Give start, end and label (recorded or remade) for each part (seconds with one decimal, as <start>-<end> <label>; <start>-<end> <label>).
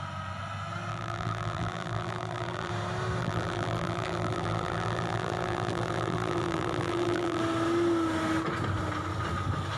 0.0-0.9 recorded; 0.9-2.7 remade; 2.7-3.2 recorded; 3.2-7.4 remade; 7.4-9.8 recorded